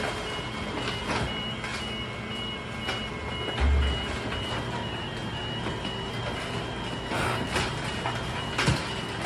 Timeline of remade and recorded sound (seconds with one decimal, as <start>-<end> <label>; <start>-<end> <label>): 0.0-9.3 recorded